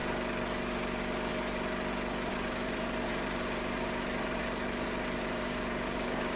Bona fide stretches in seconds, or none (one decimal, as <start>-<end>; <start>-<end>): 0.0-2.3